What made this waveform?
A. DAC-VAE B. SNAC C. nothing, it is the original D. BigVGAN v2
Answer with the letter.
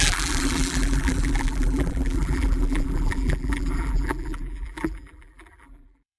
D